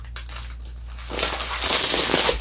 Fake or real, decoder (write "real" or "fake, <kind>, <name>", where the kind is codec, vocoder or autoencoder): real